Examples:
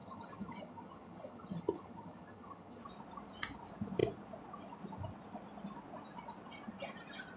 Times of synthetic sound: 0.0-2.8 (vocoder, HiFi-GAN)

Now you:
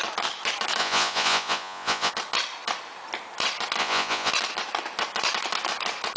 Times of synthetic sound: 0.8-2.1 (vocoder, Vocos); 3.8-4.3

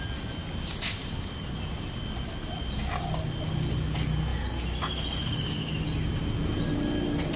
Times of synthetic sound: 1.0-3.7 (vocoder, BigVGAN v2); 4.3-6.2

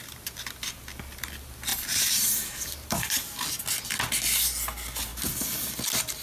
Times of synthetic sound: none